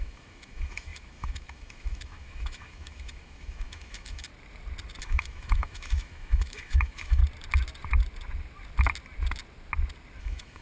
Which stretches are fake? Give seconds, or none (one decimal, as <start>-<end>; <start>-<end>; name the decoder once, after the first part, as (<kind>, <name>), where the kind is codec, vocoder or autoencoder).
0.0-4.3 (autoencoder, DAC-VAE); 5.0-7.2; 10.2-10.6